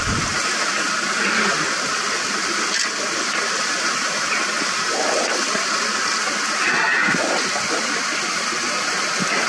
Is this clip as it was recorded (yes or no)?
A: yes